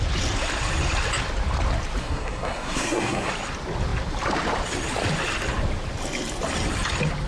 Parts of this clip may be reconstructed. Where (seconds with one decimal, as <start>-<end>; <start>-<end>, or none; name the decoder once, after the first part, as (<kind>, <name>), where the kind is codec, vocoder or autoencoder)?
2.0-3.3 (codec, SNAC)